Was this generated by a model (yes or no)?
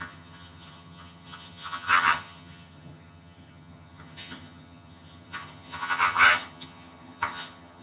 yes